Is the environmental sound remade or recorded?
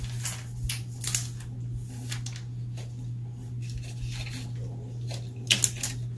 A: recorded